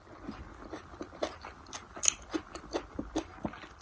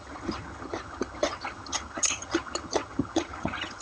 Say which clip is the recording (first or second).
first